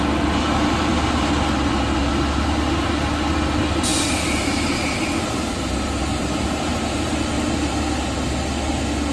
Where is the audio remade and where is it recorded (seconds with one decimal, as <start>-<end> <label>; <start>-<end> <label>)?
0.0-3.9 recorded; 3.9-7.7 remade; 7.7-9.1 recorded